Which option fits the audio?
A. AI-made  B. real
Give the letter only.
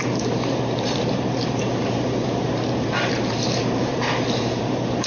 A